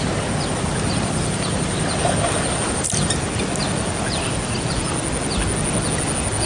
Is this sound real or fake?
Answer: real